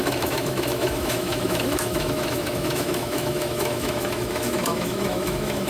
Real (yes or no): no